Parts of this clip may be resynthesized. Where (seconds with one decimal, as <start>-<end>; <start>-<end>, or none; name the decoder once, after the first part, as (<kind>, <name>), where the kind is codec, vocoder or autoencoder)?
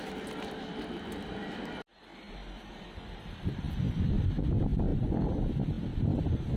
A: 4.9-5.5 (vocoder, BigVGAN v2)